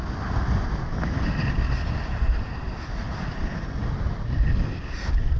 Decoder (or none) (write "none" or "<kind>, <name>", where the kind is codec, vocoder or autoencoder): none